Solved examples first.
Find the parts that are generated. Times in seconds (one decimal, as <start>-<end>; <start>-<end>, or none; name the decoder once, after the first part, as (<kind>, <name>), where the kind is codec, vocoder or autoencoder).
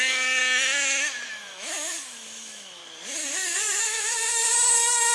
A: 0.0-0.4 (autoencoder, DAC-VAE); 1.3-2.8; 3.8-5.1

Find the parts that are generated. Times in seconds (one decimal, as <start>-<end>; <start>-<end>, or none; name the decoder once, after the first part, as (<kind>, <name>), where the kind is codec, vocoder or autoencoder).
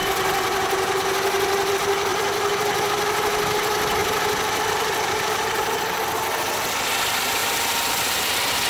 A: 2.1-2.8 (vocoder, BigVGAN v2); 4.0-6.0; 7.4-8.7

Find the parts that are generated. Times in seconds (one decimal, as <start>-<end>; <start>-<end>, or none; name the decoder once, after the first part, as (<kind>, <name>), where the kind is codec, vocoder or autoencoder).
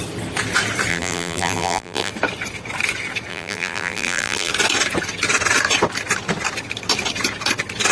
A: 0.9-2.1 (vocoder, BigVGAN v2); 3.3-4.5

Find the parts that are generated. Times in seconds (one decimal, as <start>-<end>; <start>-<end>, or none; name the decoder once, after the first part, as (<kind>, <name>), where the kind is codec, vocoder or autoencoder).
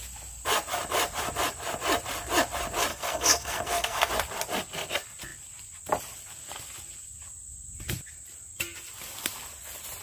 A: 2.9-4.1 (codec, SNAC)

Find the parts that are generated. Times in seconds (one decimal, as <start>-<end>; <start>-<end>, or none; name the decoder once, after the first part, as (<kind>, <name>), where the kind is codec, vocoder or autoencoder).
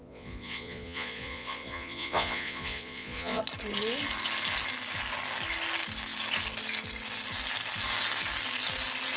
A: 0.0-3.4 (vocoder, Vocos)